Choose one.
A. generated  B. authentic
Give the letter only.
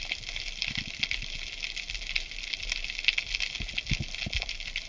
B